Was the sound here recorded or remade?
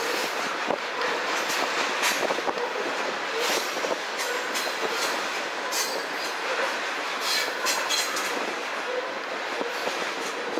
recorded